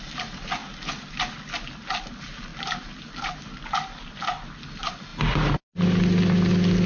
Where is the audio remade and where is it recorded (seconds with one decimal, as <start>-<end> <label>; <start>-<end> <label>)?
0.0-6.9 recorded